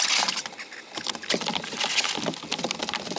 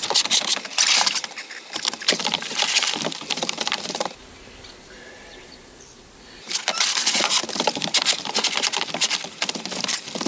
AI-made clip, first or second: second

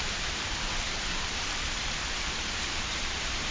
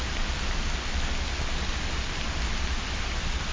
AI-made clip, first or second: first